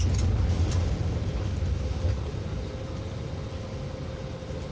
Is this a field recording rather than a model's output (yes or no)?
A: yes